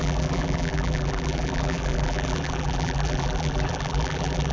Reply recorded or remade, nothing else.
remade